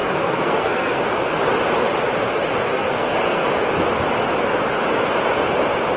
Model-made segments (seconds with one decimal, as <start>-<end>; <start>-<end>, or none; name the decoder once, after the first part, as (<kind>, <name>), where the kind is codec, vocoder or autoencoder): 0.0-1.0 (codec, SNAC); 2.7-3.5